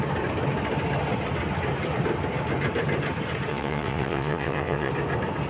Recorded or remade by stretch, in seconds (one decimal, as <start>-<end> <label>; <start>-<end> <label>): 0.0-3.5 recorded; 3.5-4.9 remade; 4.9-5.5 recorded

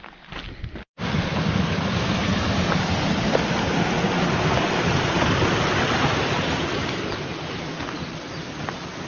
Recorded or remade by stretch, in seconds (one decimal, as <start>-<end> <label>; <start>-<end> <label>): 0.0-9.1 recorded